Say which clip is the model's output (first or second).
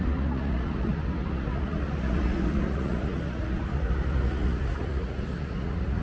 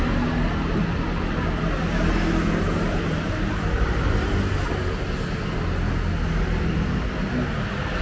first